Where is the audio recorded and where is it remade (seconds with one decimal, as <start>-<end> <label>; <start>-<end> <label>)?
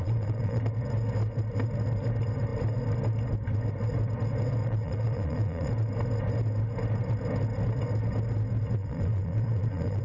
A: 0.0-0.6 remade; 0.6-4.6 recorded; 4.6-5.7 remade; 5.7-8.8 recorded; 8.8-10.0 remade